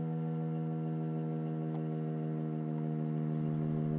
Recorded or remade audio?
recorded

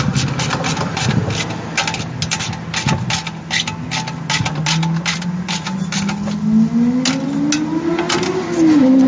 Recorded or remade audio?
recorded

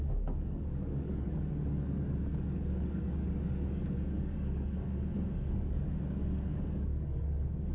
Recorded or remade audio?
remade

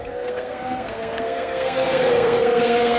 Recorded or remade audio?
remade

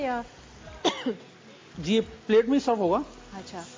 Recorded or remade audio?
recorded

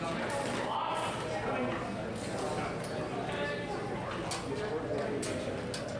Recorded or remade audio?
recorded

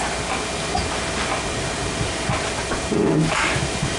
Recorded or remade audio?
recorded